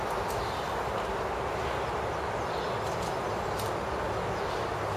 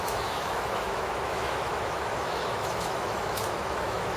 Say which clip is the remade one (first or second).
second